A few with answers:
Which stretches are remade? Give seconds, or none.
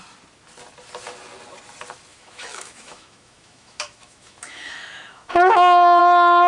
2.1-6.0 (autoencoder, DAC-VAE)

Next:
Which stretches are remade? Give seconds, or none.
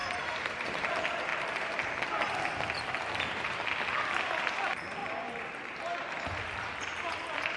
0.0-0.9 (vocoder, BigVGAN v2); 5.0-6.2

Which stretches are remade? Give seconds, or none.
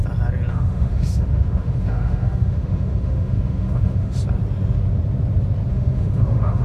0.5-4.2 (autoencoder, DAC-VAE); 5.7-6.6